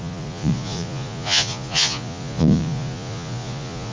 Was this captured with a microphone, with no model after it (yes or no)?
no